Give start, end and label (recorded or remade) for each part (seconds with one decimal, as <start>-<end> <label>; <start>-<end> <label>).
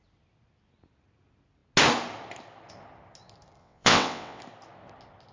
0.0-3.6 recorded; 3.6-4.4 remade; 4.4-5.3 recorded